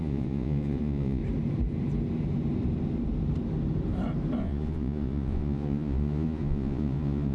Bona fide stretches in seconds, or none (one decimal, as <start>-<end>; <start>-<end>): 1.2-4.4